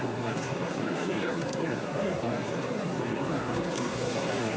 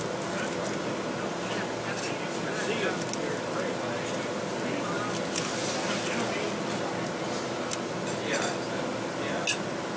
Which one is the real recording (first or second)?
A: second